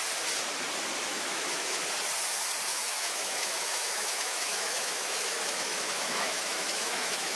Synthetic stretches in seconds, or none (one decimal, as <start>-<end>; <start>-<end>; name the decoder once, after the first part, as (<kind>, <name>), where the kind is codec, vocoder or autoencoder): 1.1-1.8 (autoencoder, DAC-VAE); 2.7-7.4